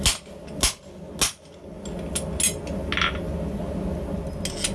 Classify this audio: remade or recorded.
recorded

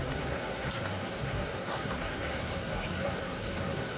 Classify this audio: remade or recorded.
remade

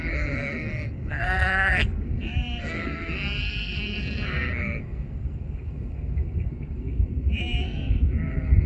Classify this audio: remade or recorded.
remade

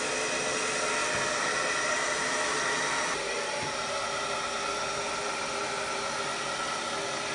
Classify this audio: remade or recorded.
recorded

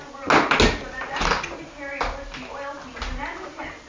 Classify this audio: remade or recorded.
recorded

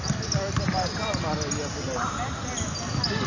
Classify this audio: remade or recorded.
recorded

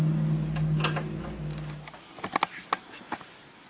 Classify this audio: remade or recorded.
recorded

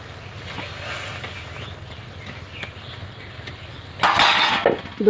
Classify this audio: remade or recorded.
recorded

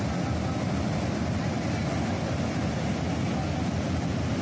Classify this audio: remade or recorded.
recorded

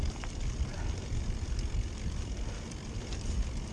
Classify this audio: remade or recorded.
recorded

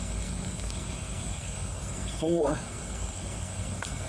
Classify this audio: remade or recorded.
remade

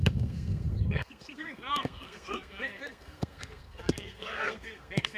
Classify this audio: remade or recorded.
remade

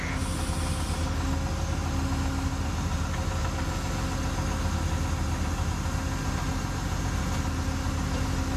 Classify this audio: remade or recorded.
recorded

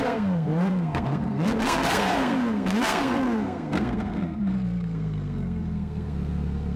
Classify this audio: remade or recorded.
remade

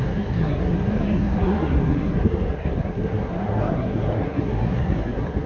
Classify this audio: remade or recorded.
remade